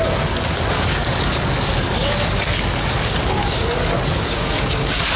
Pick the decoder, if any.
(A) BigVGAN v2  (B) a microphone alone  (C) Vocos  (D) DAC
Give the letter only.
D